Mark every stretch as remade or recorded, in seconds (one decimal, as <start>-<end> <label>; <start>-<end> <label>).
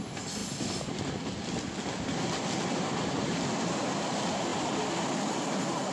0.0-5.9 recorded